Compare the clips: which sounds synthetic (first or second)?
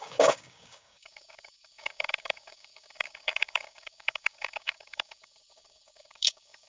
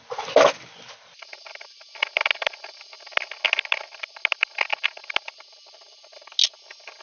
first